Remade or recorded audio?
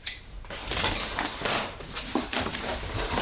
remade